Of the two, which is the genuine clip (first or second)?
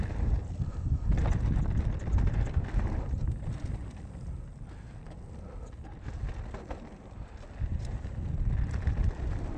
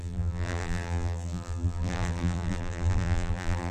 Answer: first